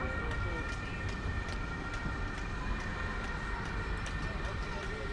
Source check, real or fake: real